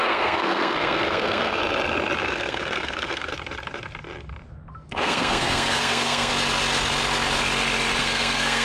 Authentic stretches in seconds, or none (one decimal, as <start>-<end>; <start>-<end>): 1.6-2.2; 3.3-4.9; 6.3-8.0